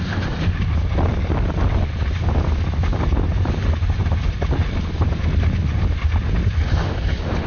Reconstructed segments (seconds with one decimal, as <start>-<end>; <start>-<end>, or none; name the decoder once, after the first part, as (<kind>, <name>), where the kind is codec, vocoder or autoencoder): none